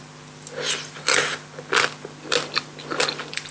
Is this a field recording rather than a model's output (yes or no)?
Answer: yes